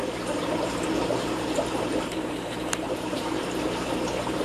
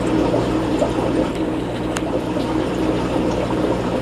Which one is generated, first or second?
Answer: first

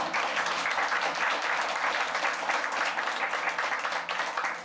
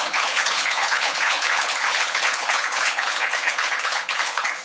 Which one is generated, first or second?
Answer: second